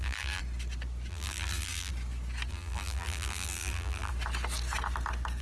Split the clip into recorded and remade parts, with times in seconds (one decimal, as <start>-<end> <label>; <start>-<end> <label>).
0.0-0.4 remade; 0.4-1.1 recorded; 1.1-1.9 remade; 1.9-2.5 recorded; 2.5-4.1 remade; 4.1-5.4 recorded